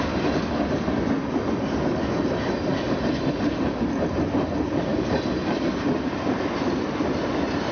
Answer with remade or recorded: recorded